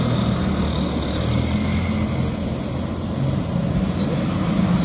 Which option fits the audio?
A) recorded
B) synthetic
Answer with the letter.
A